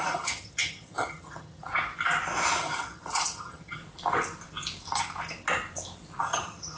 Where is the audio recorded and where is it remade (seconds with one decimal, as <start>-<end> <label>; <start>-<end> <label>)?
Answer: 0.0-1.7 remade; 1.7-2.6 recorded; 2.6-3.8 remade; 3.8-6.2 recorded; 6.2-6.8 remade